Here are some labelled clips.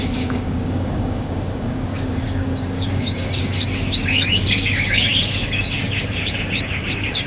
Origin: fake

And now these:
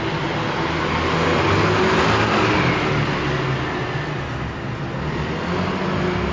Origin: real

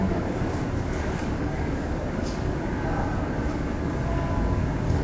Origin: fake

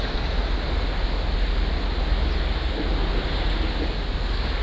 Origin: real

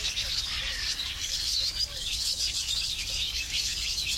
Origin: fake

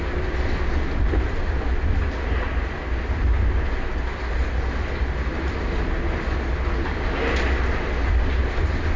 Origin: real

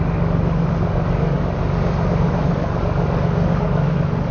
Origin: fake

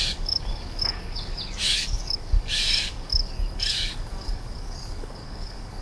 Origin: fake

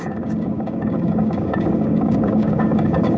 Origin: fake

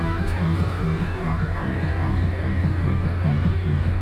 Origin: fake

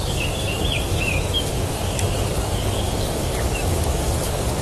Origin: fake